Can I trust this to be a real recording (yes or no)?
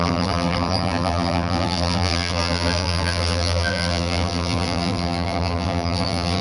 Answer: no